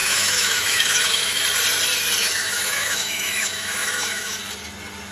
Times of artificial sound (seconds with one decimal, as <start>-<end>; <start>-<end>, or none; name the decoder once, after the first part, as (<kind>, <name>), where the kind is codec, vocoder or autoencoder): 0.0-1.4 (autoencoder, DAC-VAE); 2.2-4.4